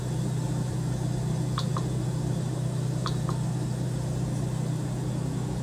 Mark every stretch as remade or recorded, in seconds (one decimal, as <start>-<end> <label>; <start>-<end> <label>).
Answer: 0.0-5.6 remade